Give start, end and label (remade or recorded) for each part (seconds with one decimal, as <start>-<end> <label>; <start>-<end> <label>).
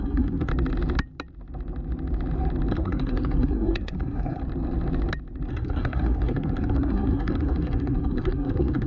0.0-0.5 remade; 0.5-2.7 recorded; 2.7-4.4 remade; 4.4-5.5 recorded; 5.5-8.9 remade